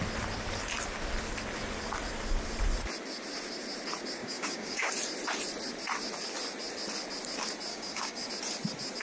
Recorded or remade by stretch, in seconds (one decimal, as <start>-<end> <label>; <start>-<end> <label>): 0.0-4.2 recorded; 4.2-4.9 remade; 4.9-7.7 recorded; 7.7-8.3 remade; 8.3-9.0 recorded